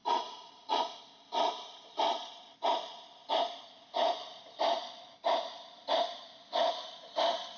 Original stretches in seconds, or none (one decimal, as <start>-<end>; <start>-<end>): 1.0-7.6

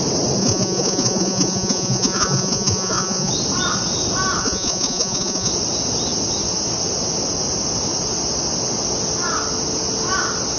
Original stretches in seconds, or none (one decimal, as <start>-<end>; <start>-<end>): 0.0-0.4; 3.3-4.4; 5.5-10.6

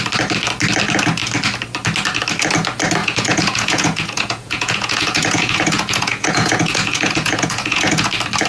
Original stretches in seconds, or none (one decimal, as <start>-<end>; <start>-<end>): 0.0-3.0; 8.1-8.5